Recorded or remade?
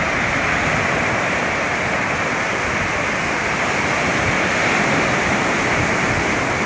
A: recorded